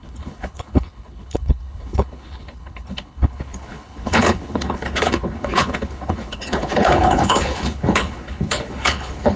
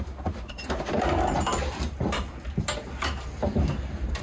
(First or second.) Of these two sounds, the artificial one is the first